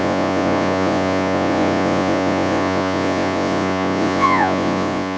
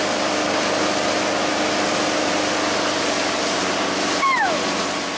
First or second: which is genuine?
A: second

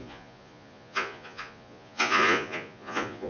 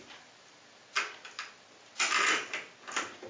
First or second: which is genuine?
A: second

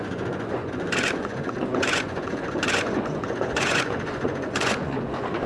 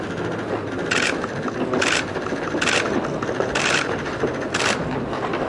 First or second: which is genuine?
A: second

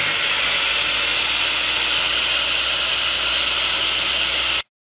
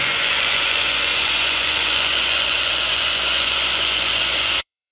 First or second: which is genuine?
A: first